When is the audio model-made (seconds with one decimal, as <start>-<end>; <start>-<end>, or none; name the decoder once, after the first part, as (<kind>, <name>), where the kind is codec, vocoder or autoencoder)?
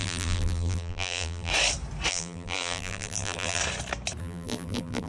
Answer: 0.0-1.5 (vocoder, BigVGAN v2); 2.1-3.6; 4.2-5.1